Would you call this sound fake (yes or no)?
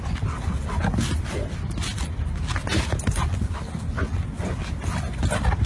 no